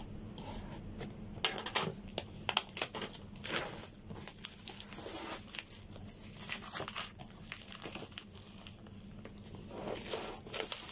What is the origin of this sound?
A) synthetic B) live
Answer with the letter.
B